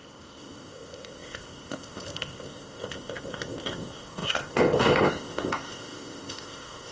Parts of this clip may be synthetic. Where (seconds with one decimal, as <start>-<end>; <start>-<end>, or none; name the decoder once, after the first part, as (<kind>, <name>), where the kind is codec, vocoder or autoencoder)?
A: 0.0-6.9 (codec, ZipCodec)